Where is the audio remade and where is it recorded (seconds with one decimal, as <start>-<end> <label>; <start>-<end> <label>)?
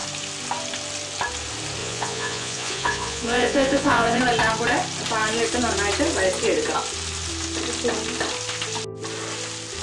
0.0-1.8 recorded; 1.8-4.2 remade; 4.2-9.8 recorded